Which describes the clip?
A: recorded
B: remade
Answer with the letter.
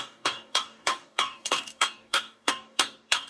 B